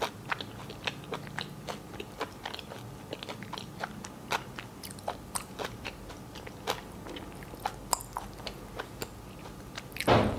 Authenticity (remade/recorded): recorded